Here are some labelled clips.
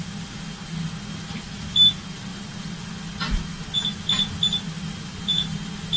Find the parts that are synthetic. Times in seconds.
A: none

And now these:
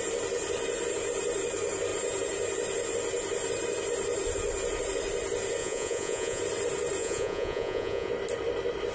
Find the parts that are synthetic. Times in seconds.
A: 5.6-6.4 (vocoder, Vocos); 7.0-8.1

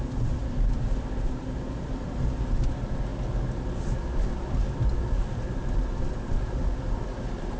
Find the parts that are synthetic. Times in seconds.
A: none